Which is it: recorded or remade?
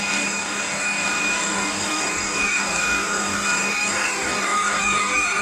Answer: remade